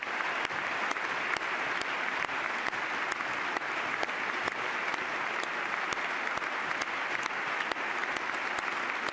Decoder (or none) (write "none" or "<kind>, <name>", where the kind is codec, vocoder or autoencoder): none